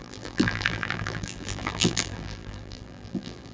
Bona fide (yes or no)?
no